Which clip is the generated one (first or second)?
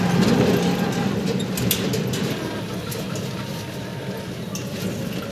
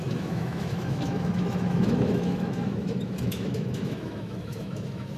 second